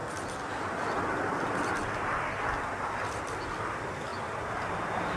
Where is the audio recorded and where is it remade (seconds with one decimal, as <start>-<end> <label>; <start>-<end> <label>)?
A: 0.0-5.2 recorded